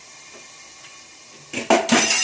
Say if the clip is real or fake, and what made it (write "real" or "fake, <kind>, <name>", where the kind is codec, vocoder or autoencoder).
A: real